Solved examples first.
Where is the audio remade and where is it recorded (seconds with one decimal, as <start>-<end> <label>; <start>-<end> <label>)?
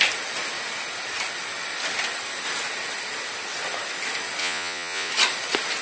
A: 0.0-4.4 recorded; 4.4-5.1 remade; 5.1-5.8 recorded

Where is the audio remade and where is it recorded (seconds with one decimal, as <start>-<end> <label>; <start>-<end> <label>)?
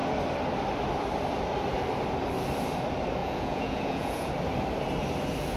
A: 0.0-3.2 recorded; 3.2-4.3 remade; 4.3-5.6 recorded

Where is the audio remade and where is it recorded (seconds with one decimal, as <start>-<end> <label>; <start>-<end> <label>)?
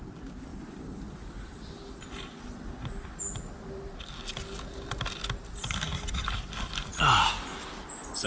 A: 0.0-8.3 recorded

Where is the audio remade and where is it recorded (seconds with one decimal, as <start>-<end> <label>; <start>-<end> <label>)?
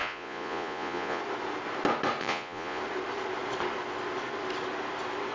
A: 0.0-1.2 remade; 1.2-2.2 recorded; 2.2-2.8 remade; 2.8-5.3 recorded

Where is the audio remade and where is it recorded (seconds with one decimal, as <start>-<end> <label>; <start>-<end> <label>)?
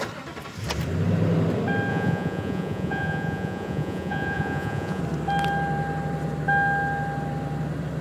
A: 0.0-1.9 recorded; 1.9-5.0 remade; 5.0-8.0 recorded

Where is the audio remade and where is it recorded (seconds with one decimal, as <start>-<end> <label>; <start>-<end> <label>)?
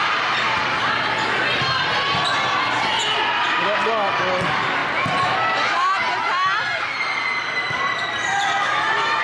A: 0.0-9.2 recorded